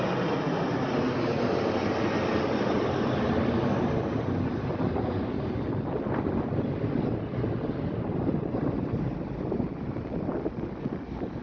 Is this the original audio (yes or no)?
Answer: yes